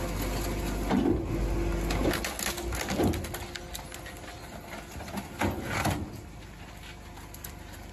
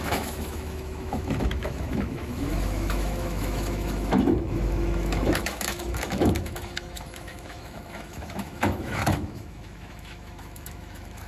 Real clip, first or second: first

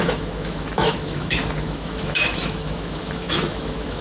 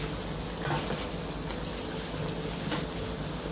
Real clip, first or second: second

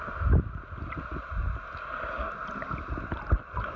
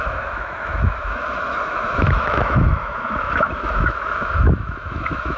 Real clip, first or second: first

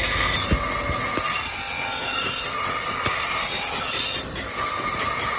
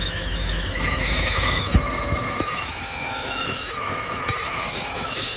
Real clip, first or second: first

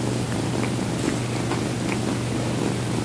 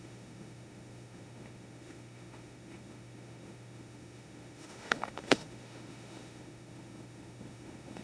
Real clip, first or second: first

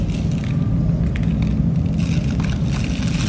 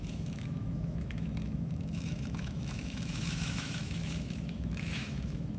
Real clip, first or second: first